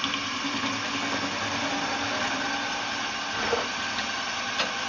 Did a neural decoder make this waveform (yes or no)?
no